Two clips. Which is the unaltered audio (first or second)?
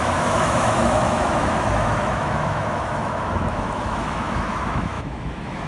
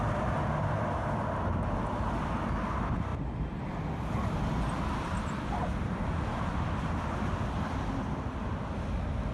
second